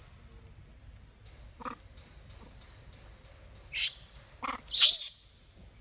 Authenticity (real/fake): real